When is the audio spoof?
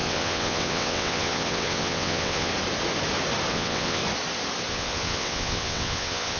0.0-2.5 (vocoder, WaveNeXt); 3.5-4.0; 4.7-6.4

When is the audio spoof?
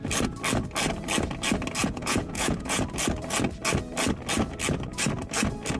1.8-2.8 (vocoder, Vocos)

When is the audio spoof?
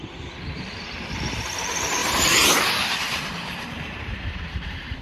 2.0-5.0 (vocoder, BigVGAN v2)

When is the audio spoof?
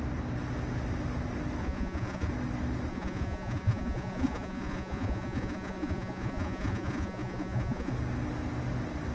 1.6-2.3 (vocoder, Vocos); 2.9-7.9